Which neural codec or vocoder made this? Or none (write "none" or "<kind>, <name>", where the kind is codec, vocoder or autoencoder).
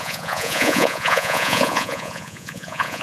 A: vocoder, Vocos